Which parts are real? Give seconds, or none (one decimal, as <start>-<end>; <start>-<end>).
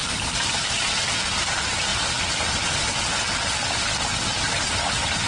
0.5-5.3